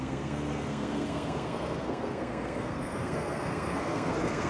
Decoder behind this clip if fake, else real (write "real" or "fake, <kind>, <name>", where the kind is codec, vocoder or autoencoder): fake, codec, SNAC